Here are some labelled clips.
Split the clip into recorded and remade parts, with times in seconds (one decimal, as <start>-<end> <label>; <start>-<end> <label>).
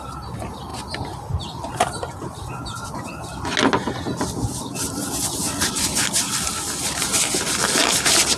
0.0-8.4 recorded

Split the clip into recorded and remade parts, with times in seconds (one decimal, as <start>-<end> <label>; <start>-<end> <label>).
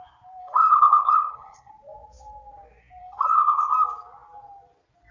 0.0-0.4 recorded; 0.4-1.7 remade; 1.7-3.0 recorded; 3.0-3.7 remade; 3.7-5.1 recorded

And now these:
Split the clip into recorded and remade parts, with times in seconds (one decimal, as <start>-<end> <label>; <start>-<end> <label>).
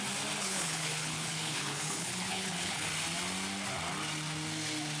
0.0-0.4 recorded; 0.4-2.9 remade; 2.9-5.0 recorded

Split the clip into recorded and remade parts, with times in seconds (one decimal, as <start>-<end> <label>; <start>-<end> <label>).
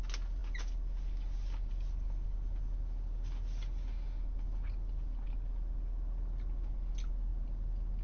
0.0-8.0 recorded